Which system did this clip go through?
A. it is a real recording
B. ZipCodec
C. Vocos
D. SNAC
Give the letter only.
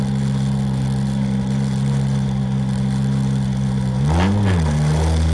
A